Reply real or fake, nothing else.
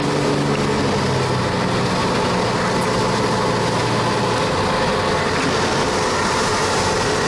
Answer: real